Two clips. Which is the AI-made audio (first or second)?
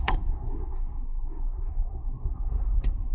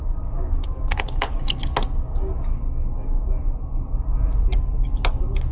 first